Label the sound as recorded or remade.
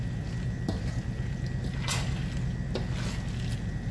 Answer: recorded